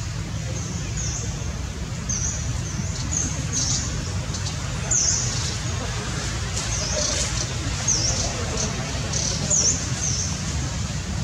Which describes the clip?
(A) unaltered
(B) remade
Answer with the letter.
A